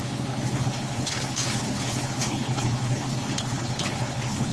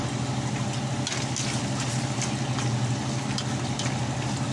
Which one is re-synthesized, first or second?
first